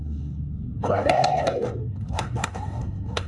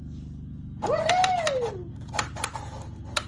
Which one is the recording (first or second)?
second